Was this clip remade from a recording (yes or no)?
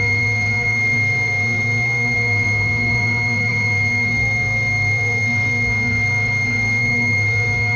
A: yes